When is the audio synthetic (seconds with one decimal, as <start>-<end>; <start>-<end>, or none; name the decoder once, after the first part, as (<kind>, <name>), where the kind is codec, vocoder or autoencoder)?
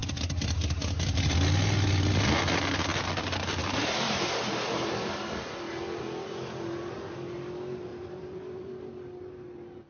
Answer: 0.0-1.3 (vocoder, BigVGAN v2); 3.6-5.4; 7.9-8.7